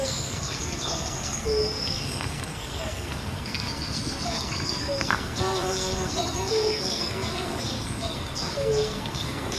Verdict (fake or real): fake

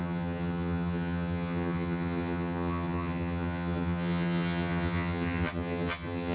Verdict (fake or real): fake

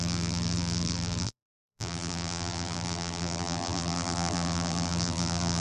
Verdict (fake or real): fake